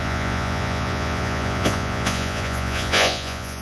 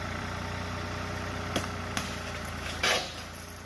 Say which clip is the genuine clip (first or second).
second